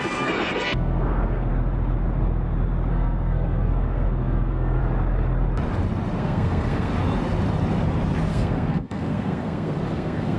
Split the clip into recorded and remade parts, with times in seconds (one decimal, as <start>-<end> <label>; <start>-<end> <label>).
0.0-1.5 remade; 1.5-2.9 recorded; 2.9-4.8 remade; 4.8-6.2 recorded; 6.2-6.9 remade; 6.9-8.3 recorded; 8.3-10.4 remade